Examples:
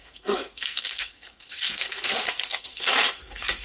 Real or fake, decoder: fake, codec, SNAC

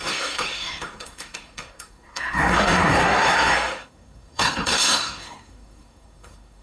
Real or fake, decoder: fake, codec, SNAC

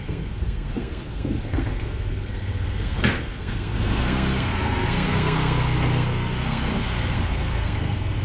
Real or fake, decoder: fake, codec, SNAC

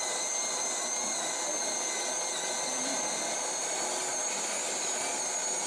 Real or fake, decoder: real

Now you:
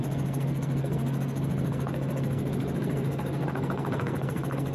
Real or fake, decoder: fake, codec, SNAC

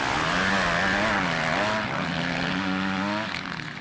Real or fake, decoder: real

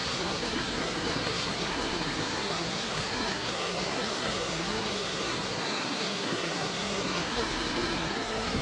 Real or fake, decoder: fake, codec, SNAC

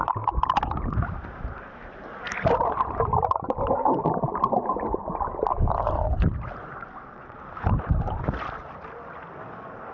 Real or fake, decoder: real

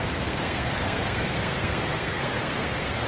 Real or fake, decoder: fake, codec, SNAC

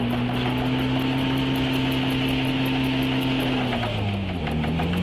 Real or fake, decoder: real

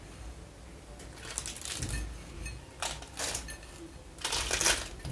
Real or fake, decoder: real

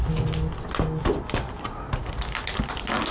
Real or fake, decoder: real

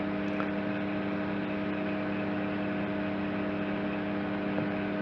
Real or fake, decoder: real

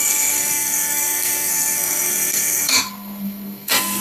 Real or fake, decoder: fake, codec, SNAC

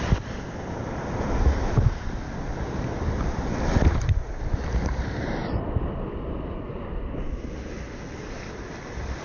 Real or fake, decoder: real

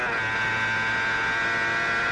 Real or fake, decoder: real